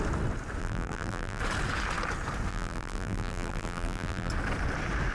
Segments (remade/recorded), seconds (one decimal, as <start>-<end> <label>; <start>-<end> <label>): 0.0-0.6 recorded; 0.6-1.4 remade; 1.4-2.5 recorded; 2.5-4.3 remade; 4.3-5.1 recorded